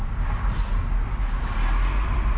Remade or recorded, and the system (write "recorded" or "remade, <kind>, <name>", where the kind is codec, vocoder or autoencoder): recorded